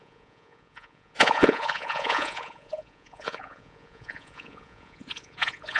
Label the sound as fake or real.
fake